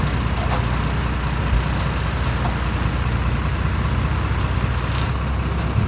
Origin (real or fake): real